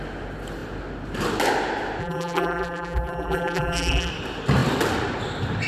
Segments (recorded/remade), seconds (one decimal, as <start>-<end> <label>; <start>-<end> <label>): 0.0-2.0 recorded; 2.0-4.1 remade; 4.1-5.7 recorded